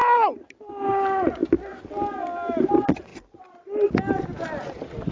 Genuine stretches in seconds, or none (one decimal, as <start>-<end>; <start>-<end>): 0.0-5.1